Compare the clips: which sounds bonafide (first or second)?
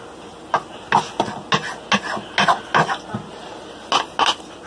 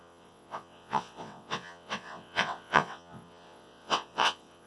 first